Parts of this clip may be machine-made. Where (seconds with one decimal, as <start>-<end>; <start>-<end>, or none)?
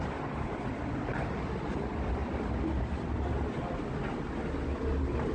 none